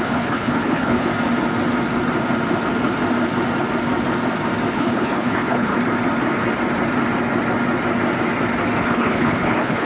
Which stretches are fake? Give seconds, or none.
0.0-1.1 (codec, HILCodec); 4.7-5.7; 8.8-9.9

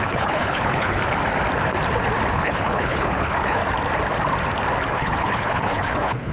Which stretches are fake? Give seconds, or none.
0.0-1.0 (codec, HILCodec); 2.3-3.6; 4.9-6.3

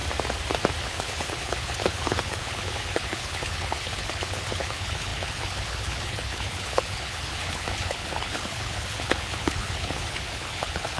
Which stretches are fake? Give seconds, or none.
0.8-11.0 (codec, HILCodec)